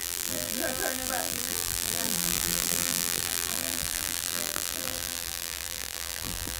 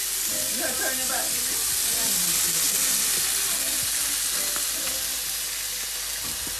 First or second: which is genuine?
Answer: second